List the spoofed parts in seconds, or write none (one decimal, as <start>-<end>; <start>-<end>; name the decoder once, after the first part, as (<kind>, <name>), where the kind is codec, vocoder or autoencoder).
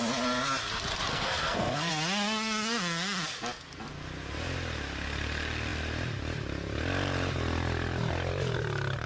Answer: 1.1-1.9 (codec, SNAC)